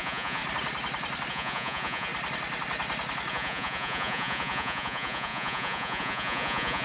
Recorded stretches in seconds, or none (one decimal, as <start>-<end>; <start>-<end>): 0.4-1.3; 2.1-3.3